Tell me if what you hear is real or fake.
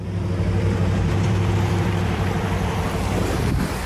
fake